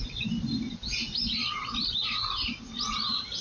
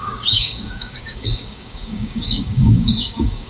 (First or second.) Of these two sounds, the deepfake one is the second